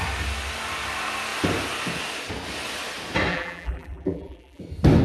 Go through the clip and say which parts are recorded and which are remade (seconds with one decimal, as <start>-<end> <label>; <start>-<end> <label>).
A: 0.0-3.3 recorded; 3.3-4.6 remade; 4.6-5.0 recorded